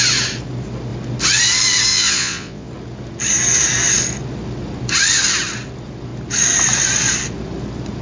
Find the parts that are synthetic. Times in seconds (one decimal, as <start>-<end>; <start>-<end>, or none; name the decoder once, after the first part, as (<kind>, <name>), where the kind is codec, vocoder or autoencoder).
1.9-2.7 (vocoder, Vocos)